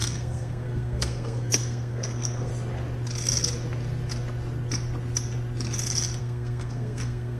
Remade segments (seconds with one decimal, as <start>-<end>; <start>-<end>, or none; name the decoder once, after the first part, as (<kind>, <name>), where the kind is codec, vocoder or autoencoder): 0.0-2.5 (codec, SNAC); 6.2-7.4